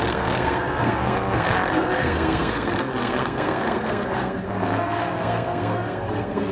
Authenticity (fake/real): fake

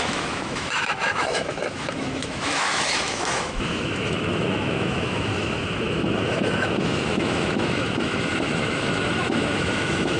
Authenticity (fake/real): fake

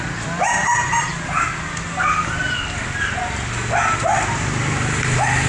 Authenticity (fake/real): real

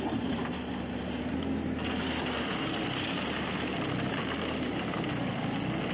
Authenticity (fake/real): real